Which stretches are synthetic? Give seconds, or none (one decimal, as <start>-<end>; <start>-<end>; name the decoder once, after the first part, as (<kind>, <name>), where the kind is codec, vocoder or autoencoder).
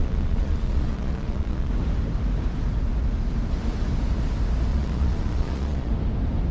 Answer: 0.0-1.7 (vocoder, Vocos); 4.7-5.9